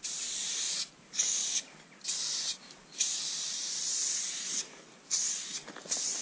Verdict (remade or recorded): recorded